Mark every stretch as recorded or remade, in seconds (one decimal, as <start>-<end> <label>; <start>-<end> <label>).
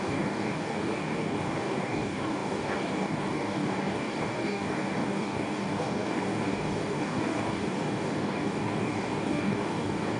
0.0-10.2 remade